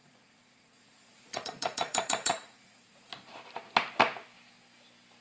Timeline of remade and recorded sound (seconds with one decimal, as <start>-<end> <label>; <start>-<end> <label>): 0.0-3.1 remade; 3.1-5.2 recorded